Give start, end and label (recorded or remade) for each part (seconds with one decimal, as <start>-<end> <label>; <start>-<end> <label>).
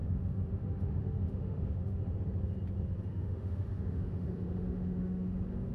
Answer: 0.0-2.0 remade; 2.0-3.1 recorded; 3.1-5.7 remade